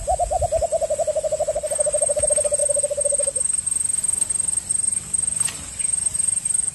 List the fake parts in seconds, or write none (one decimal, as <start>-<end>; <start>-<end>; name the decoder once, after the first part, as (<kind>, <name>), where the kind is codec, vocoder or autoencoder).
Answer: 0.0-2.6 (vocoder, BigVGAN v2); 4.0-6.7